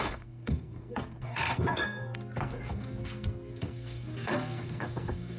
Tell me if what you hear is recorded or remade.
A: remade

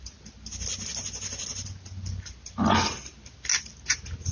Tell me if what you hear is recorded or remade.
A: recorded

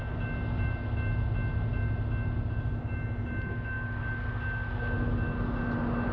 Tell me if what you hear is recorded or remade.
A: recorded